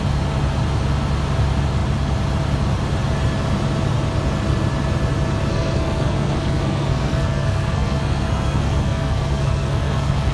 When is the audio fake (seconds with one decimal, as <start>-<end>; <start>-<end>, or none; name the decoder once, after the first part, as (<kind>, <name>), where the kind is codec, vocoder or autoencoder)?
5.5-10.3 (codec, SNAC)